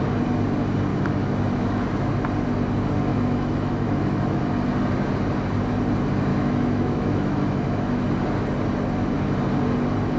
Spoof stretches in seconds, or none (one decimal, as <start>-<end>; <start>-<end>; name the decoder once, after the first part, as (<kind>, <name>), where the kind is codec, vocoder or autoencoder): 0.9-1.8 (autoencoder, DAC-VAE); 3.1-4.4; 6.3-8.1